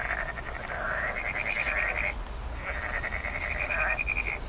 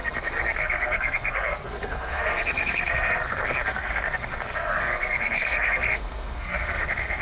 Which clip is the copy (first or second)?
second